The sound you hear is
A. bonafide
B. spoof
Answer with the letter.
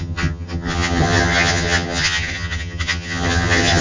B